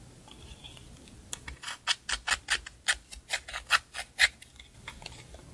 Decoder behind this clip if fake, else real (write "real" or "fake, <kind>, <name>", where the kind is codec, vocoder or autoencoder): real